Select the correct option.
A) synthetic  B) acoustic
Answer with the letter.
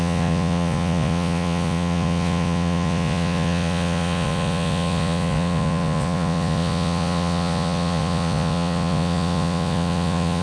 A